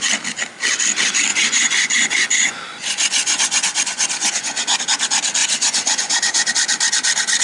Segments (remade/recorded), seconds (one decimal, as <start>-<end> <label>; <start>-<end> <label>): 0.0-1.3 recorded; 1.3-4.8 remade; 4.8-5.4 recorded; 5.4-6.5 remade; 6.5-7.4 recorded